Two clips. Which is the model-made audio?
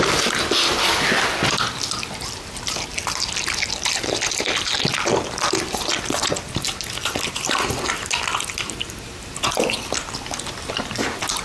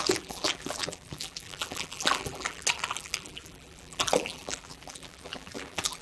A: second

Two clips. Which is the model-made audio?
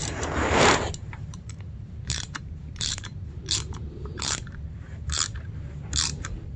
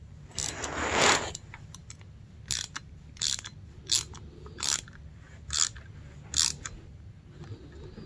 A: first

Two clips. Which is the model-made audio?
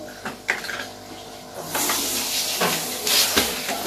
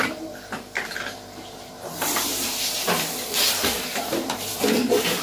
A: second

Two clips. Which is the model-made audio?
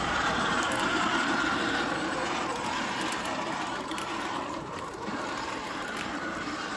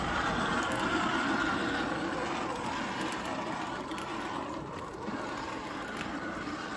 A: first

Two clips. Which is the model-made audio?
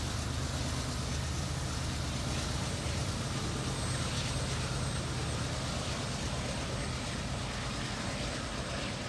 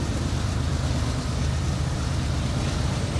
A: second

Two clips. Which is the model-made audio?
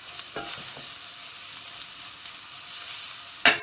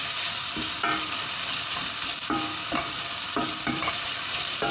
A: second